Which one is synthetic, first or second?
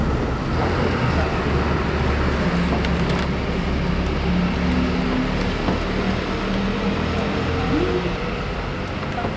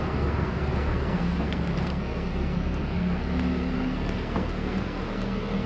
second